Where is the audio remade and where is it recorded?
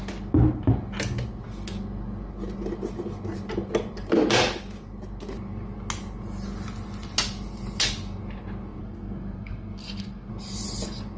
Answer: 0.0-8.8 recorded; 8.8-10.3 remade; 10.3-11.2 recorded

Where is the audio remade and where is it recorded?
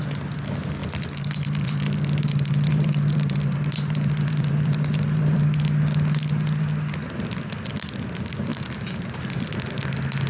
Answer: 0.0-0.8 recorded; 0.8-5.4 remade; 5.4-8.5 recorded; 8.5-9.6 remade; 9.6-10.3 recorded